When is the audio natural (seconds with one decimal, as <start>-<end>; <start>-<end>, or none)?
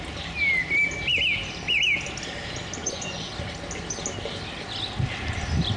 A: 0.0-2.8; 3.3-5.8